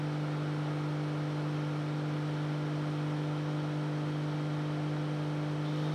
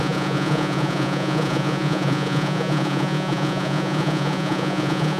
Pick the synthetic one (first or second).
second